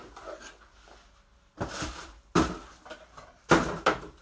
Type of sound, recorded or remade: recorded